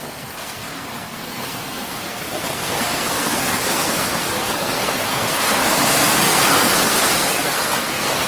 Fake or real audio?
fake